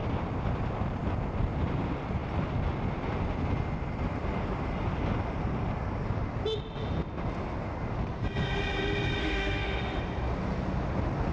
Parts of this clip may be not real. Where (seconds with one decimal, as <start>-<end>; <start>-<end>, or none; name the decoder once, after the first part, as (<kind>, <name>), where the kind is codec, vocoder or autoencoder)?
9.2-10.0 (autoencoder, DAC-VAE)